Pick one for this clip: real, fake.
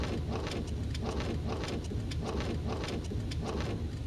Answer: real